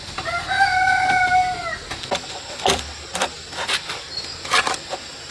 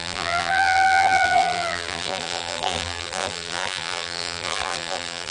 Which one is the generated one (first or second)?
second